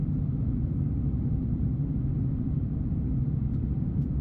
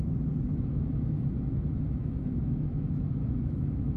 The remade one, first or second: second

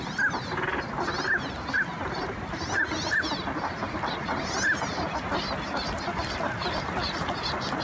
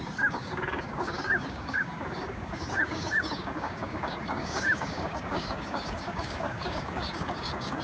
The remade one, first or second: second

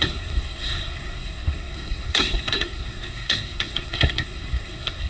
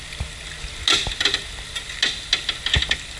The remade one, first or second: first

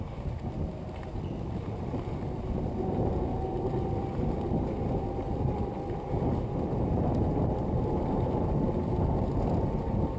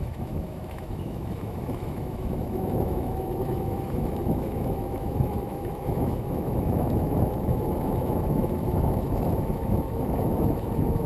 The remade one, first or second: second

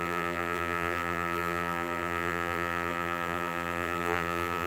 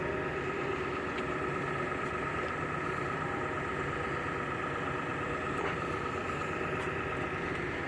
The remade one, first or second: first